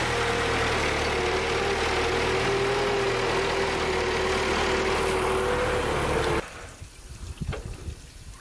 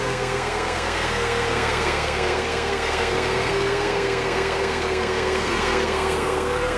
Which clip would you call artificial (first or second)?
second